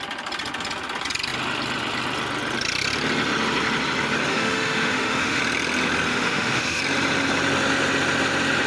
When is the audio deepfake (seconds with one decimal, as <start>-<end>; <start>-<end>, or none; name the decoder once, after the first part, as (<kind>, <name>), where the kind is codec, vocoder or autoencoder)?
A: 4.3-5.4 (autoencoder, DAC-VAE); 6.1-6.8